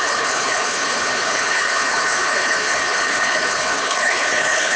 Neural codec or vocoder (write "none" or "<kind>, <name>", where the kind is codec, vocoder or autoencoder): codec, HILCodec